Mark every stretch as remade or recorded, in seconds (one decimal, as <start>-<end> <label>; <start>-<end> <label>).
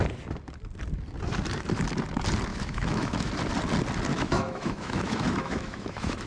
0.0-2.5 recorded; 2.5-3.3 remade; 3.3-4.1 recorded; 4.1-6.3 remade